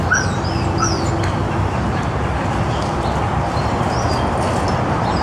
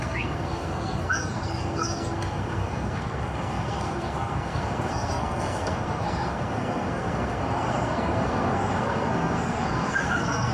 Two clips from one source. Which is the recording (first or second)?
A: first